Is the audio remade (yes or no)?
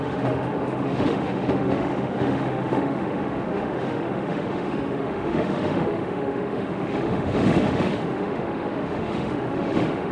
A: yes